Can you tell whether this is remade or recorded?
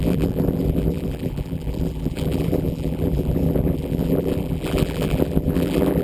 remade